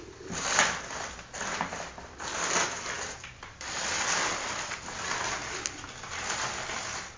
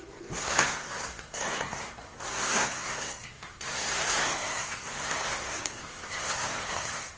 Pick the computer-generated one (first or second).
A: second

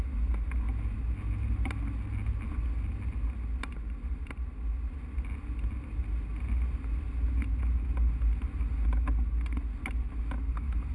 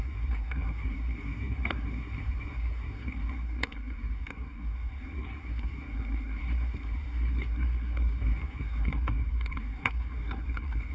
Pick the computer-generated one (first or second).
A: second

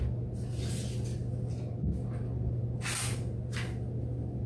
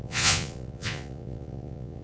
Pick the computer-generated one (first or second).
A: second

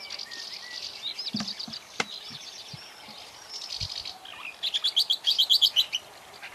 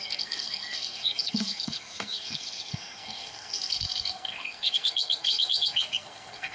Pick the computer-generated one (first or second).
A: second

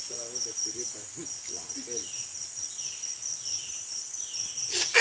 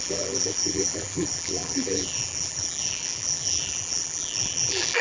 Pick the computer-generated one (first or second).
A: second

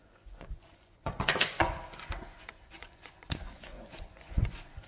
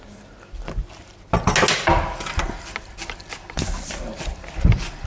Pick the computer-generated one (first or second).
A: first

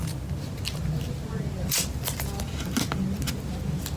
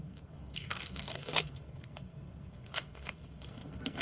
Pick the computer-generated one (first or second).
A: second